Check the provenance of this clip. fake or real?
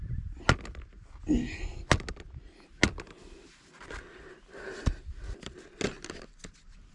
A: real